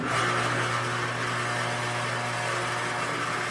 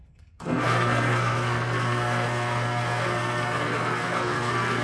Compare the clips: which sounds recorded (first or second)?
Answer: first